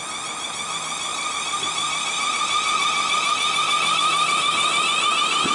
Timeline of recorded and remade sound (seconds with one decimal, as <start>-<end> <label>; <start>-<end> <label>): 0.0-1.1 recorded; 1.1-2.2 remade; 2.2-5.5 recorded